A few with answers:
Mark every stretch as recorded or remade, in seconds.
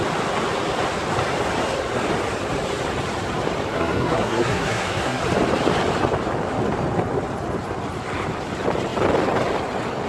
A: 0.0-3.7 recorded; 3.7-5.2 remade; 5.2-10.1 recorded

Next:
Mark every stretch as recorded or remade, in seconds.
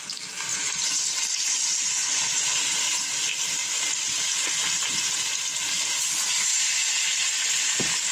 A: 0.0-0.5 recorded; 0.5-1.0 remade; 1.0-8.1 recorded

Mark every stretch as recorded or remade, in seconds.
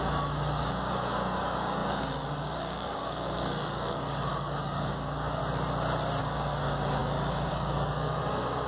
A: 0.0-5.4 remade; 5.4-6.2 recorded; 6.2-8.7 remade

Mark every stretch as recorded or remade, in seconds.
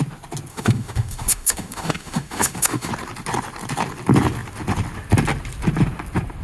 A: 0.0-0.5 recorded; 0.5-2.9 remade; 2.9-6.4 recorded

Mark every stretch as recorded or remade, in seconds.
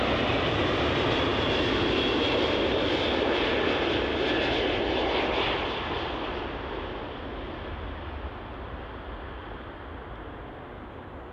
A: 0.0-11.3 recorded